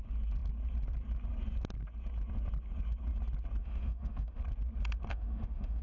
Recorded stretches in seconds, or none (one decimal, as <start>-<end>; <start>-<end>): 0.0-3.6; 4.4-5.1